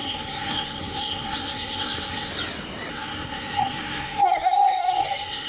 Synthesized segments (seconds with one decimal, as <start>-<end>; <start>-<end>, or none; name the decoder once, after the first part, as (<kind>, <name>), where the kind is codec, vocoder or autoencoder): 0.0-2.3 (codec, SNAC); 2.9-5.5